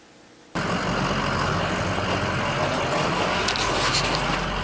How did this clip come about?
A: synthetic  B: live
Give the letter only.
B